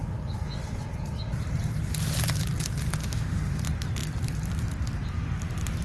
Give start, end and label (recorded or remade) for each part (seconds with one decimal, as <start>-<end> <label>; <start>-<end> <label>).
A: 0.0-3.0 recorded; 3.0-3.6 remade; 3.6-5.8 recorded